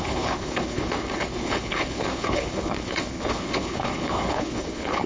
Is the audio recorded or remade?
remade